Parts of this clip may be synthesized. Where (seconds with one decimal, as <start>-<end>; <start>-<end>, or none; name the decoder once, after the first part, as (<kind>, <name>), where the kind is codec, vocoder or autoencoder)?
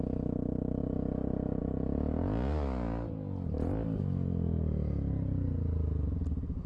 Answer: none